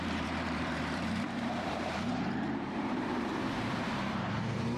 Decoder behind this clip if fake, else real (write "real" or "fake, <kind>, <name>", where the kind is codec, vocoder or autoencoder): fake, vocoder, BigVGAN v2